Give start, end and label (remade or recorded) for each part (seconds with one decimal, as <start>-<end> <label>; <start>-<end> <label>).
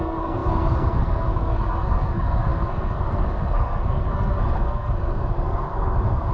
0.0-6.3 remade